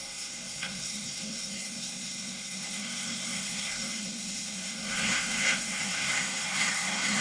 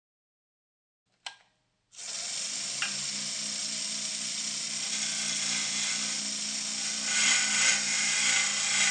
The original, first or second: second